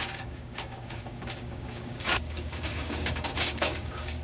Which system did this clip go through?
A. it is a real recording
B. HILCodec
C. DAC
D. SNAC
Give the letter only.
C